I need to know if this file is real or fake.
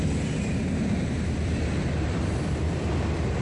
real